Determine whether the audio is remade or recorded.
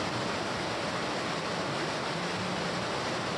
recorded